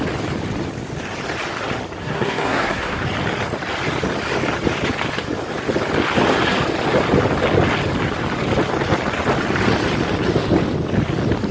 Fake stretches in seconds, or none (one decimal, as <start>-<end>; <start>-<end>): 2.0-3.0